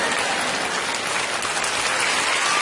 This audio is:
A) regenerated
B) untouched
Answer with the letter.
B